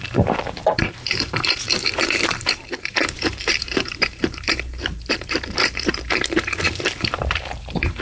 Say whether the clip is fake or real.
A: fake